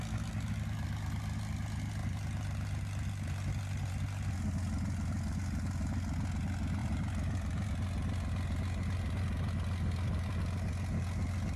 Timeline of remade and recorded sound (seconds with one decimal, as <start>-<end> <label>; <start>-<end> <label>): 0.0-2.0 recorded; 2.0-3.9 remade; 3.9-6.8 recorded; 6.8-7.7 remade; 7.7-11.6 recorded